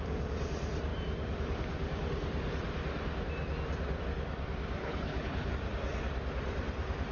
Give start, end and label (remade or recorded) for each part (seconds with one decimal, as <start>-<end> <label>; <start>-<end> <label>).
0.0-4.8 recorded; 4.8-5.5 remade; 5.5-7.1 recorded